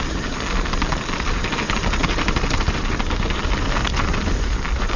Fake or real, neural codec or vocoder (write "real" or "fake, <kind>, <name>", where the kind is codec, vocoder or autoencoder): real